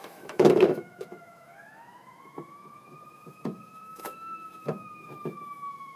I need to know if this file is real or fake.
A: fake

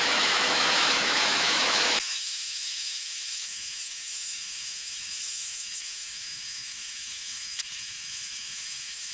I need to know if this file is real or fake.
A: fake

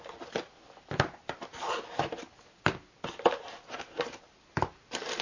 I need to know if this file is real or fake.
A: real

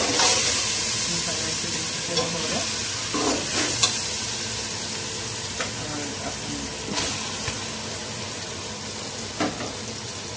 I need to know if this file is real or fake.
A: real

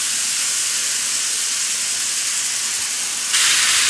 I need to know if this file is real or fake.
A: real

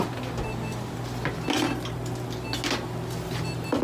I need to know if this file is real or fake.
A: real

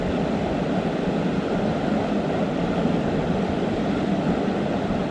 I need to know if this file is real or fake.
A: real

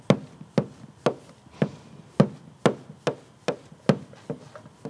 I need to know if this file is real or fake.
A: real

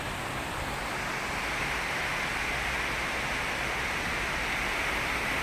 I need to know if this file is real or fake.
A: real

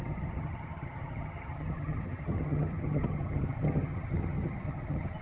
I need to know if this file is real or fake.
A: fake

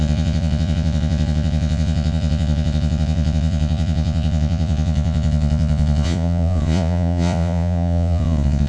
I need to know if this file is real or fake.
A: fake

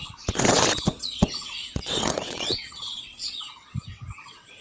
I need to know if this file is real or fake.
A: fake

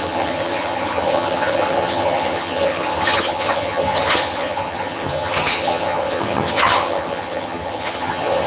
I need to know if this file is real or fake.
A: fake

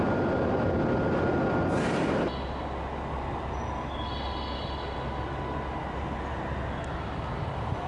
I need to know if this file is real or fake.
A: real